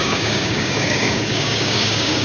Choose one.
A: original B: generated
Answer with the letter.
B